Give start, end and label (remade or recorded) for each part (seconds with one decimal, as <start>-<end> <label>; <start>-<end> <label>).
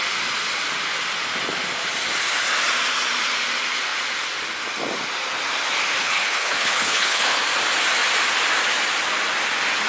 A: 0.0-6.0 recorded; 6.0-7.4 remade; 7.4-9.9 recorded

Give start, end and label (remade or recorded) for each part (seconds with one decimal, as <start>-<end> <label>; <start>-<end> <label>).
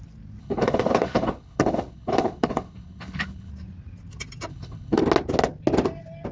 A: 0.0-0.4 recorded; 0.4-3.5 remade; 3.5-4.5 recorded; 4.5-5.0 remade; 5.0-6.3 recorded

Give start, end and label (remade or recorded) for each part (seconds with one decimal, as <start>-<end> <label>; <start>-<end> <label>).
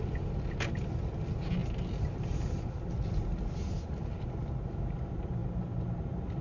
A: 0.0-6.4 recorded